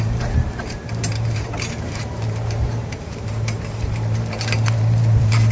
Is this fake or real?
fake